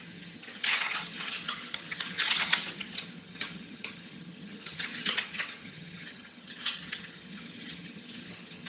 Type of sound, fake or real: fake